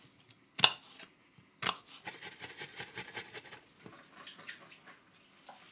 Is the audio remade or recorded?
recorded